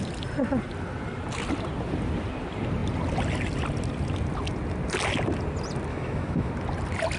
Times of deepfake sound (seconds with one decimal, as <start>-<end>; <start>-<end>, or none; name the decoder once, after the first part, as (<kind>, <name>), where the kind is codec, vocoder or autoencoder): 5.9-6.5 (autoencoder, DAC-VAE)